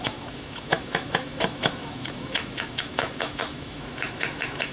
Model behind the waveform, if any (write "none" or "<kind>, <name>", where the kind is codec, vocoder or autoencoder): autoencoder, DAC-VAE